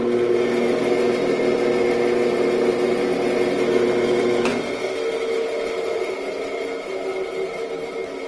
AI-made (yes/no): no